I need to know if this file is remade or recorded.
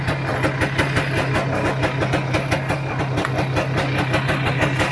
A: recorded